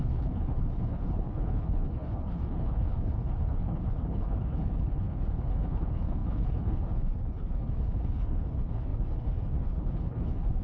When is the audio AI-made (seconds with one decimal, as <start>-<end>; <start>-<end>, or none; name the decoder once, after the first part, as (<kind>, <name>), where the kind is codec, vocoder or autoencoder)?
0.0-10.6 (codec, HILCodec)